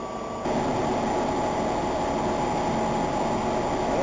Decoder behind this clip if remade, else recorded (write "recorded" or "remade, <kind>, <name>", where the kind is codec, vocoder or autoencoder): recorded